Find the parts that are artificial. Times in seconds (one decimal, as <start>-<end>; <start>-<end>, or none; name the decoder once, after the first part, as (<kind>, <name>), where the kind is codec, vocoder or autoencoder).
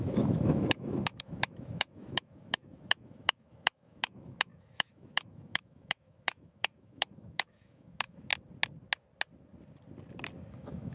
0.0-8.3 (autoencoder, DAC-VAE); 10.5-10.9